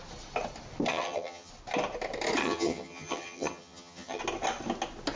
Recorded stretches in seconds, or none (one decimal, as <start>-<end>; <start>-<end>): 0.0-0.9; 1.5-2.4; 4.2-5.2